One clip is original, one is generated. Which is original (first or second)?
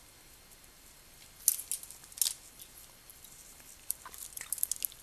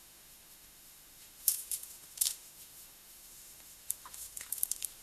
first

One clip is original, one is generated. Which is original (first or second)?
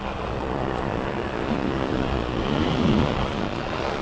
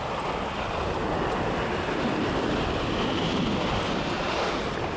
second